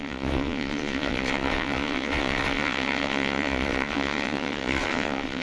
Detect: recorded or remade remade